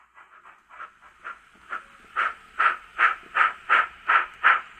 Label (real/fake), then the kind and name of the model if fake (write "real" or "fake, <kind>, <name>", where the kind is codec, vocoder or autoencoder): real